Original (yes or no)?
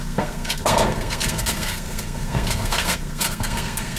no